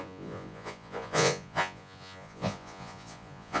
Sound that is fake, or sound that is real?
fake